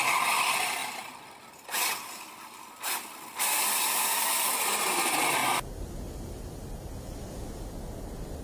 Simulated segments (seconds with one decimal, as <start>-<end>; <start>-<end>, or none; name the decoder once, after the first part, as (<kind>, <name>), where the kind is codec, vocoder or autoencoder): none